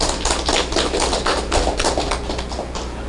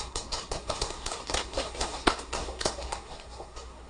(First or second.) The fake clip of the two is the second